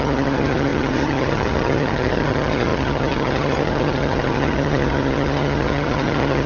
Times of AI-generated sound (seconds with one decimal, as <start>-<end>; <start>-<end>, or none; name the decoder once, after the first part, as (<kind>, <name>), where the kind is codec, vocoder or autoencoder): 0.0-6.5 (vocoder, HiFi-GAN)